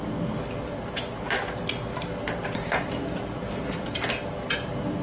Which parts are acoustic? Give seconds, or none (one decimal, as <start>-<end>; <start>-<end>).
0.0-1.9; 4.0-5.0